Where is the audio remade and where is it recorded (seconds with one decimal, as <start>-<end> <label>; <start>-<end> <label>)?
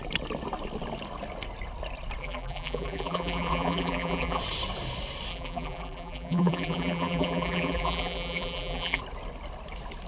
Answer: 0.0-2.2 recorded; 2.2-4.4 remade; 4.4-5.3 recorded; 5.3-9.0 remade; 9.0-10.1 recorded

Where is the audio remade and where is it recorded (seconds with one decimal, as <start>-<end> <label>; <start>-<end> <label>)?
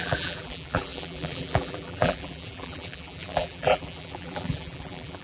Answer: 0.0-5.2 remade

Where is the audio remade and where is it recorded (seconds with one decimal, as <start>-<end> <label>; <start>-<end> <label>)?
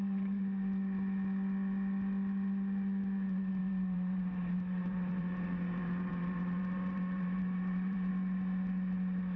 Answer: 0.0-3.6 recorded; 3.6-8.1 remade; 8.1-9.4 recorded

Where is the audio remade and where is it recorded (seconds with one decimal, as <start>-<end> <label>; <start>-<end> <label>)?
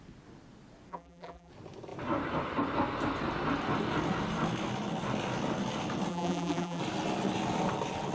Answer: 0.0-0.9 recorded; 0.9-1.5 remade; 1.5-6.1 recorded; 6.1-6.8 remade; 6.8-8.1 recorded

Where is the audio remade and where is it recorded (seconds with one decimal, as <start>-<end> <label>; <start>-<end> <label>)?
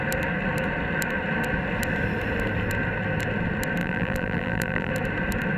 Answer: 0.0-3.8 recorded; 3.8-4.9 remade; 4.9-5.6 recorded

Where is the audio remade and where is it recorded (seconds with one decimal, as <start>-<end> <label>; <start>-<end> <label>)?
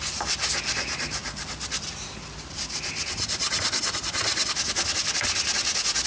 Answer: 0.0-6.1 recorded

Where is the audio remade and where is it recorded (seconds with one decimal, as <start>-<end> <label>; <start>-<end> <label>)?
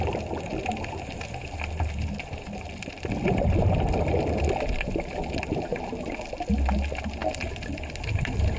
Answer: 0.0-0.5 recorded; 0.5-4.4 remade; 4.4-5.7 recorded; 5.7-6.2 remade; 6.2-7.2 recorded; 7.2-8.6 remade